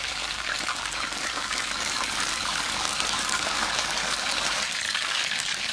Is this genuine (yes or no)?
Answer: no